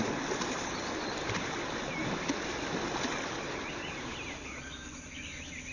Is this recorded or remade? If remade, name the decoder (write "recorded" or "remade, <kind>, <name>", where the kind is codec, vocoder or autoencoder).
recorded